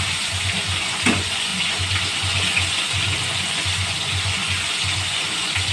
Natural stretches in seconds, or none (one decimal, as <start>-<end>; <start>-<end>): none